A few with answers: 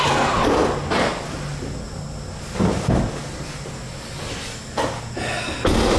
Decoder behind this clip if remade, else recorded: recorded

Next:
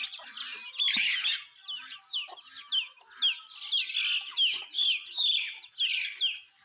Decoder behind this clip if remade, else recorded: recorded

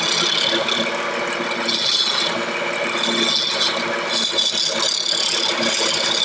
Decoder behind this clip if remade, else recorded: recorded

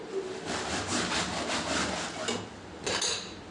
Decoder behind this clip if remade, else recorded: recorded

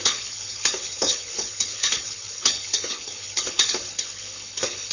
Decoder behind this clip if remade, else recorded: remade, codec, HILCodec